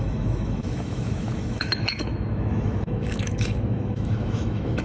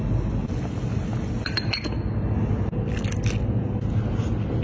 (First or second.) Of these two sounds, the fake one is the first